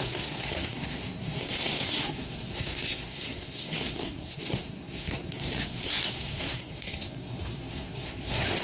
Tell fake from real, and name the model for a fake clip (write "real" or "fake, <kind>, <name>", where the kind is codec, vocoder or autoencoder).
fake, codec, SNAC